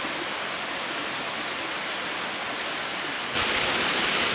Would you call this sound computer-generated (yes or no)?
no